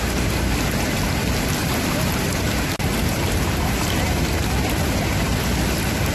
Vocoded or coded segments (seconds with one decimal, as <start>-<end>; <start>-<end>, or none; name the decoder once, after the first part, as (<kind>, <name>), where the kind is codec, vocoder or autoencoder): 1.6-5.1 (vocoder, BigVGAN v2)

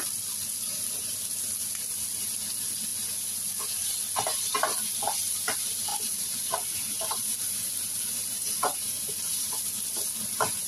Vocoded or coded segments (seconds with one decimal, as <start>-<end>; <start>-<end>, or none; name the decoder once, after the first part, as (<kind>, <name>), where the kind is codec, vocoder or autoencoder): 5.9-9.5 (vocoder, BigVGAN v2)

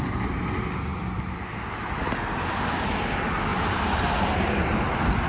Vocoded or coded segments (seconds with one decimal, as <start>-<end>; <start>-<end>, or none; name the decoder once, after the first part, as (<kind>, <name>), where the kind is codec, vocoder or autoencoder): 3.5-4.1 (vocoder, BigVGAN v2)

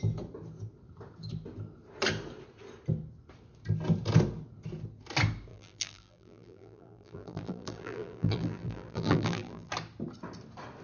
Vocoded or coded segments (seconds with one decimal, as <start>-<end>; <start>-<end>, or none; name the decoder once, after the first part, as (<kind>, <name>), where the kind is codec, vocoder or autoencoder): 5.5-9.7 (vocoder, BigVGAN v2)

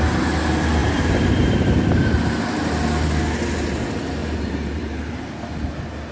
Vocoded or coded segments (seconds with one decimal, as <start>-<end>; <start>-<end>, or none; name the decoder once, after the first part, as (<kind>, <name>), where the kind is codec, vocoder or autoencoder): 0.8-2.2 (vocoder, BigVGAN v2); 4.2-5.1